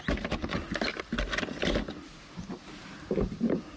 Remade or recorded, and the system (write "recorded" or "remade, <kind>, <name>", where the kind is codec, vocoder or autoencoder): recorded